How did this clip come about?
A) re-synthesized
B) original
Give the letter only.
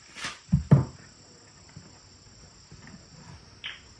B